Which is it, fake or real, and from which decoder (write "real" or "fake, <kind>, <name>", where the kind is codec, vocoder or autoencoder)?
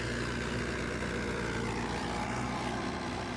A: fake, vocoder, BigVGAN v2